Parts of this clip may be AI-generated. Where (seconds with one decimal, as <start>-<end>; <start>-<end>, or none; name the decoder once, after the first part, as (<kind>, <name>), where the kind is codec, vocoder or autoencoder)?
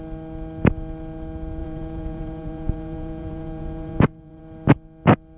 1.6-4.4 (vocoder, Vocos)